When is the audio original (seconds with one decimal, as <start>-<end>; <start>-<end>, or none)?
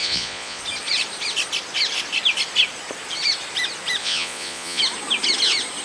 0.6-4.0; 4.8-5.8